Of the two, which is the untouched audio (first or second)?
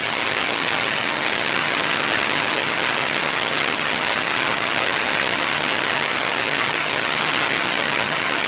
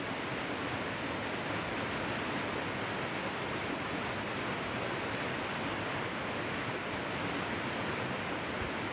second